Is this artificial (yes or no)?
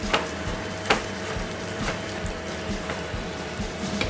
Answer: yes